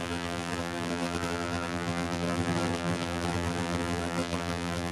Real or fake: fake